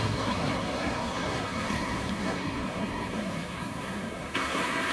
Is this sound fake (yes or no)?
yes